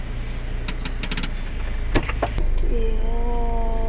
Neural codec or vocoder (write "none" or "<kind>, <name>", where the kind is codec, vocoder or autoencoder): none